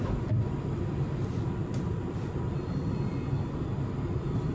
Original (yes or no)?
no